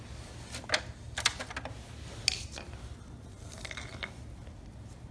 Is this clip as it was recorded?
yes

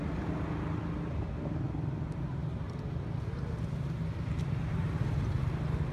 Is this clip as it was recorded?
yes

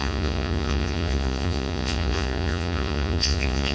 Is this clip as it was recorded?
no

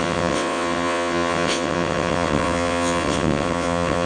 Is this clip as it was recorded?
no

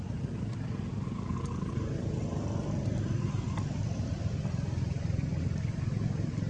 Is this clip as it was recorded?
yes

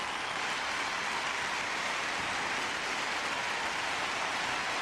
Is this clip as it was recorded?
yes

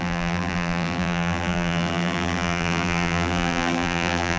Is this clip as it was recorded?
no